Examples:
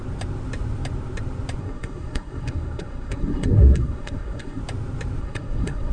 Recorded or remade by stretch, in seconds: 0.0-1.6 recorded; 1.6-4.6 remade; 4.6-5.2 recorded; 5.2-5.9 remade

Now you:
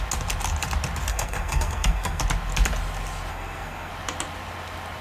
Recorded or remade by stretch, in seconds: 0.0-1.1 recorded; 1.1-2.2 remade; 2.2-3.3 recorded; 3.3-3.9 remade; 3.9-5.0 recorded

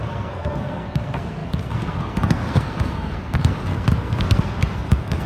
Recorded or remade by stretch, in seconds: 0.0-5.3 remade

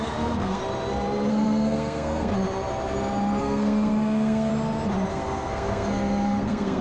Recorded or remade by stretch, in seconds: 0.0-0.6 remade; 0.6-1.3 recorded; 1.3-2.3 remade; 2.3-3.4 recorded; 3.4-4.5 remade; 4.5-5.1 recorded; 5.1-6.8 remade

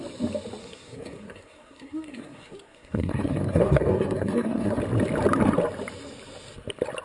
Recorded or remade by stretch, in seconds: 0.0-0.6 recorded; 0.6-4.8 remade; 4.8-7.0 recorded